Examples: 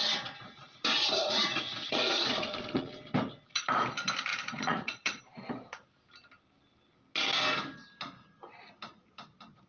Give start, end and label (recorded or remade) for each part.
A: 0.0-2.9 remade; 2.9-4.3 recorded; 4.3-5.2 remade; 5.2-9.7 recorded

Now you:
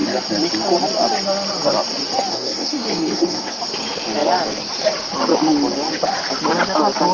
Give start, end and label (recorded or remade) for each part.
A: 0.0-2.3 recorded; 2.3-3.6 remade; 3.6-7.1 recorded

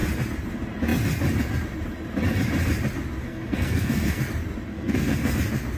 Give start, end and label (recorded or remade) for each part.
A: 0.0-3.2 recorded; 3.2-4.2 remade; 4.2-4.7 recorded; 4.7-5.3 remade; 5.3-5.8 recorded

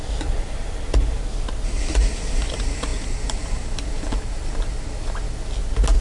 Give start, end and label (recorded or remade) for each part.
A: 0.0-6.0 recorded

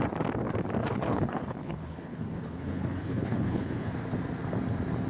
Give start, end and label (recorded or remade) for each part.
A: 0.0-0.8 recorded; 0.8-3.9 remade; 3.9-5.1 recorded

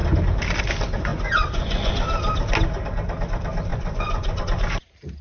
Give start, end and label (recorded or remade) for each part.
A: 0.0-1.1 recorded; 1.1-1.9 remade; 1.9-3.7 recorded; 3.7-4.4 remade; 4.4-5.2 recorded